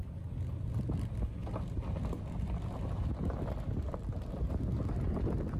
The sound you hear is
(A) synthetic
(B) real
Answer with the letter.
B